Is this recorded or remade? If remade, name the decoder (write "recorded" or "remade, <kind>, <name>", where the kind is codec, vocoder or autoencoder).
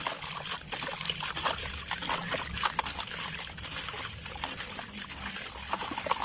recorded